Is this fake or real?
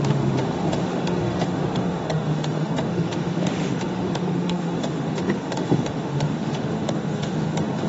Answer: fake